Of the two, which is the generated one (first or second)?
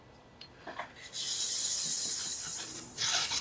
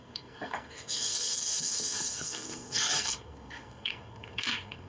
second